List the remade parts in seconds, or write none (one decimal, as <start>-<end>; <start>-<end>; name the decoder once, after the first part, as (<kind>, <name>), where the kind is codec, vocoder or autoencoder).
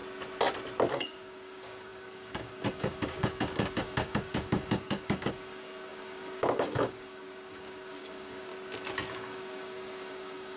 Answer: 0.9-8.5 (codec, DAC); 9.1-10.6